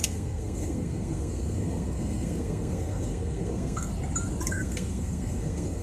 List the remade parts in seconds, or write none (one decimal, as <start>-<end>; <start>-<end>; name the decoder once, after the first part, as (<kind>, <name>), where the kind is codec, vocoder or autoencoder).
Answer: 0.0-3.9 (codec, SNAC); 4.5-5.8